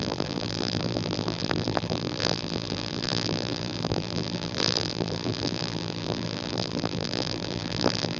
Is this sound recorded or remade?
remade